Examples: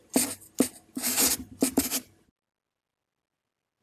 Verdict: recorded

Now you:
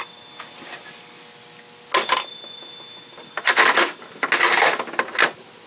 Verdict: recorded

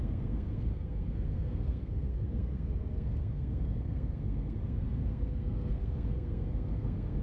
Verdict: remade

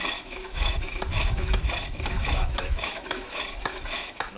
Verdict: remade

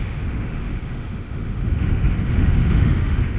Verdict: remade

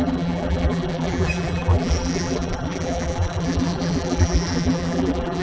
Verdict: remade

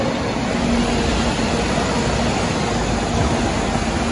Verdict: recorded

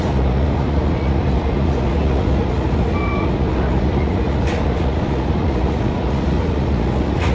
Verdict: remade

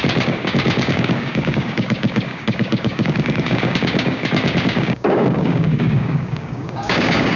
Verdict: remade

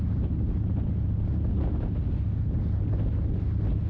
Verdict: recorded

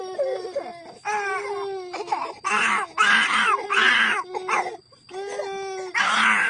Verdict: recorded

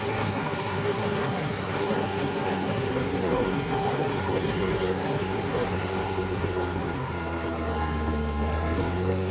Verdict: remade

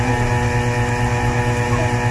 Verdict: recorded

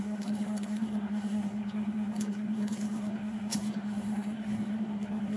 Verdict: remade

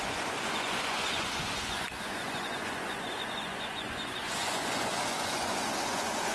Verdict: remade